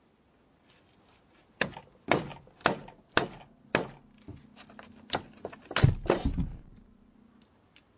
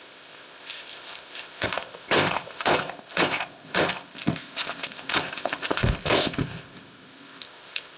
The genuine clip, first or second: first